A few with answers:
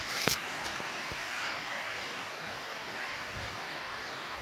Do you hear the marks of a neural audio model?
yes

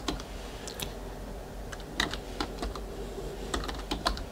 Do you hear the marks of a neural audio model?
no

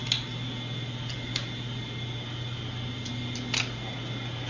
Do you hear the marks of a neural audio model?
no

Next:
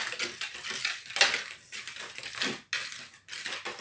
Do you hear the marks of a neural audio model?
no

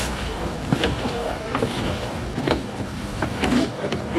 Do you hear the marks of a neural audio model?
yes